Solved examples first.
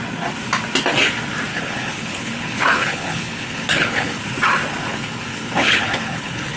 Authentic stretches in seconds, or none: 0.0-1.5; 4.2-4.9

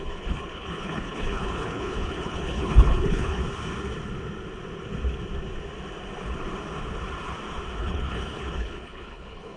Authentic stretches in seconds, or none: 3.4-7.8